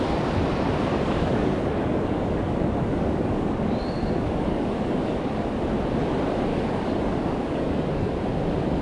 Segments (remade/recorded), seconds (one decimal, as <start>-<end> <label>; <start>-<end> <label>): 0.0-0.9 recorded; 0.9-5.3 remade; 5.3-6.5 recorded; 6.5-8.1 remade; 8.1-8.8 recorded